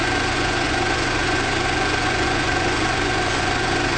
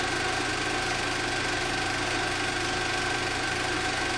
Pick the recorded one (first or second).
second